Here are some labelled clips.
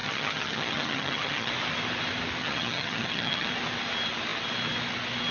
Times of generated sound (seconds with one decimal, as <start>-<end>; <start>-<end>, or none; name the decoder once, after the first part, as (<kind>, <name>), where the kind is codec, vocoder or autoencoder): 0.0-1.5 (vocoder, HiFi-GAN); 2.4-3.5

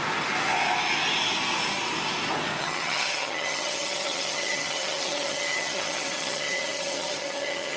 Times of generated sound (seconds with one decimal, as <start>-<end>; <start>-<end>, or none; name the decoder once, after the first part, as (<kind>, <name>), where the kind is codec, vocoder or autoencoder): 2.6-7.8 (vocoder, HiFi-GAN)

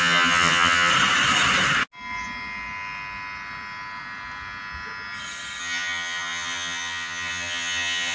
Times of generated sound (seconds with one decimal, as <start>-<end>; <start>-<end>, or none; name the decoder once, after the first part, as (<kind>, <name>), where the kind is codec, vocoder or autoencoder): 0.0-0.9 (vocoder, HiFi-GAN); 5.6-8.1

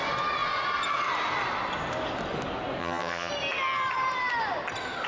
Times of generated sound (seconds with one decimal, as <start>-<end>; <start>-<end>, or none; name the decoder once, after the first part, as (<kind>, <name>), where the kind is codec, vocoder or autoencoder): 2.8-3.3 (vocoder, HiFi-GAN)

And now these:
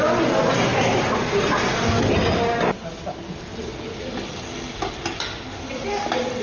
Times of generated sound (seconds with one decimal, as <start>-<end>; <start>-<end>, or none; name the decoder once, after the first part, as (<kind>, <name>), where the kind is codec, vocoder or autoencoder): none